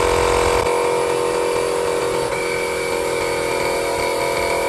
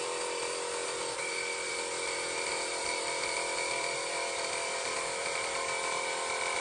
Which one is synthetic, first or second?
second